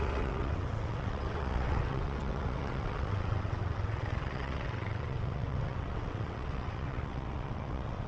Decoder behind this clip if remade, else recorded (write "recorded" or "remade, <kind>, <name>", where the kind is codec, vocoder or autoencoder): remade, vocoder, WaveNeXt